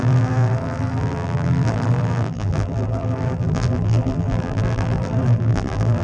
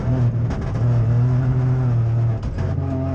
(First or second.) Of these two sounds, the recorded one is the second